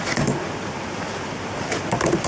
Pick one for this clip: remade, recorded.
recorded